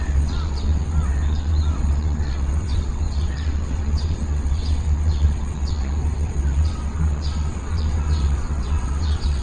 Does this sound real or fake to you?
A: fake